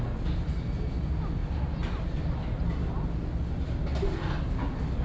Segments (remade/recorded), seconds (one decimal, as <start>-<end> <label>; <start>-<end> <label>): 0.0-5.0 recorded